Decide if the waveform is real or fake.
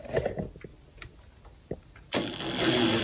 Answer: real